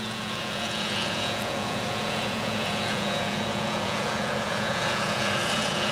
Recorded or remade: remade